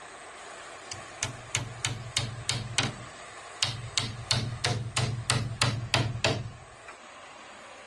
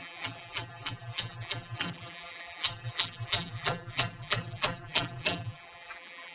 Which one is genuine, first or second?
first